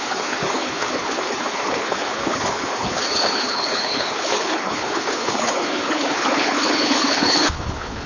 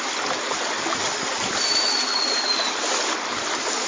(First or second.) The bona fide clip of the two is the second